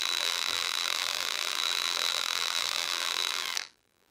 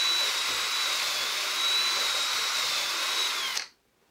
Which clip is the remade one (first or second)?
first